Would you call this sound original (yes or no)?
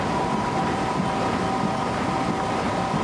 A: yes